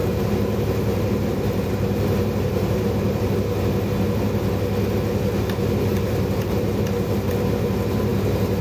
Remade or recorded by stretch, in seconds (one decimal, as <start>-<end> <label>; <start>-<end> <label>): 0.0-3.3 remade; 3.3-5.9 recorded; 5.9-7.3 remade; 7.3-8.6 recorded